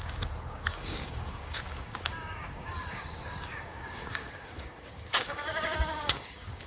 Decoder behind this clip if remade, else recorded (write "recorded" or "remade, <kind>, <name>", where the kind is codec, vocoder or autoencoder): remade, codec, DAC